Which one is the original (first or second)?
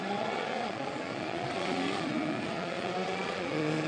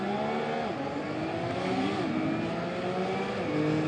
second